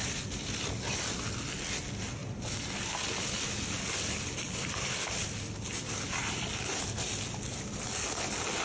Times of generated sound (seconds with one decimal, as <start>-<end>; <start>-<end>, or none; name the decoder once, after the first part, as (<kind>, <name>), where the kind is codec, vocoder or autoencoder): 0.0-1.4 (vocoder, BigVGAN v2); 5.2-5.7